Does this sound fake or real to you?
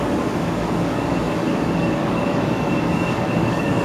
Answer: fake